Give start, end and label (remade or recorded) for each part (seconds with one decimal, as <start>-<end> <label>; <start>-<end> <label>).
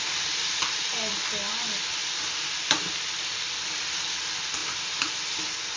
0.0-2.0 remade; 2.0-2.6 recorded; 2.6-5.8 remade